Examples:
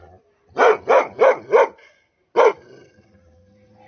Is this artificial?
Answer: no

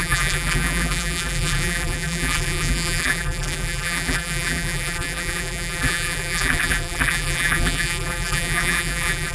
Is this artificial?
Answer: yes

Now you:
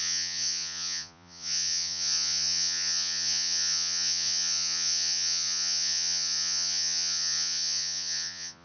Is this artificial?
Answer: yes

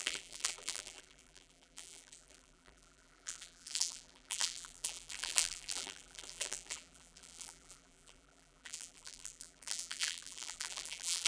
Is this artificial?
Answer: yes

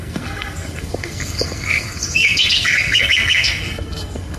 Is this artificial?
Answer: yes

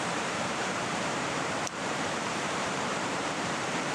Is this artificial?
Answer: yes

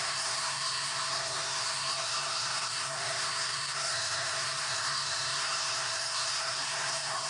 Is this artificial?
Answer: yes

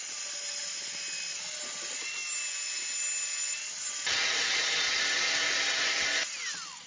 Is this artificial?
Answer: no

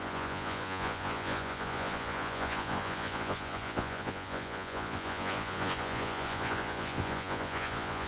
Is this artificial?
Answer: yes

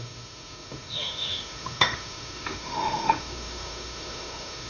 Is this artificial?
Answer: yes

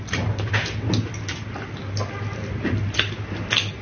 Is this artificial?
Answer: no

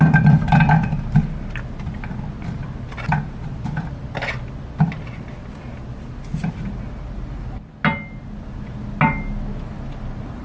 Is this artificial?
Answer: no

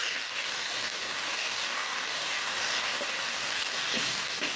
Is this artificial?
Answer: yes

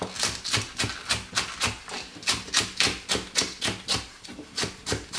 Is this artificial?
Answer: no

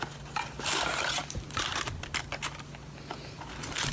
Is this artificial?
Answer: no